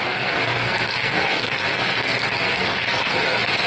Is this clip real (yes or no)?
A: no